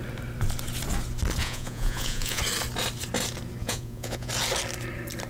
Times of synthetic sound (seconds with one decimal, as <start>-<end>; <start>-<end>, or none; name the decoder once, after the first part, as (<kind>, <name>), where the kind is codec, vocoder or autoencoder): 1.4-2.4 (vocoder, Vocos); 3.6-4.3

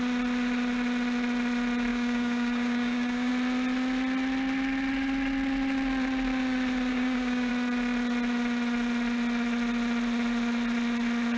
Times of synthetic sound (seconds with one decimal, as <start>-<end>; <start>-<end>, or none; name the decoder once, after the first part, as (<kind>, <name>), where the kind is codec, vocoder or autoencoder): 1.9-3.3 (codec, DAC); 6.9-7.5